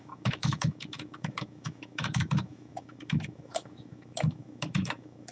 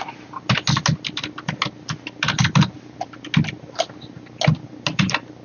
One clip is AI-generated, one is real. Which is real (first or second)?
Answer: second